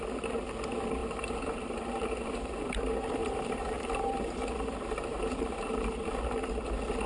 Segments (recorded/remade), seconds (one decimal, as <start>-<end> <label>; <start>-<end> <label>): 0.0-1.0 recorded; 1.0-2.8 remade; 2.8-3.2 recorded; 3.2-6.2 remade; 6.2-7.1 recorded